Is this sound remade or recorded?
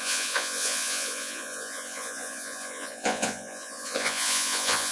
remade